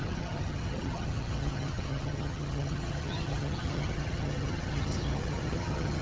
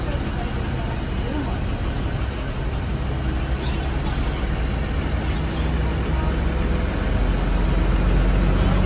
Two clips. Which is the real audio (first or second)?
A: second